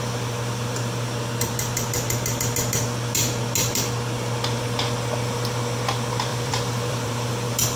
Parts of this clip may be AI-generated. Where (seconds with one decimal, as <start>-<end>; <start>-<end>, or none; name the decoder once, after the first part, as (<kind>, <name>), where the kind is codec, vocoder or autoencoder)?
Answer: 6.3-7.8 (vocoder, BigVGAN v2)